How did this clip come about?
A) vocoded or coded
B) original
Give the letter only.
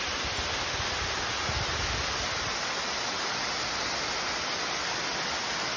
B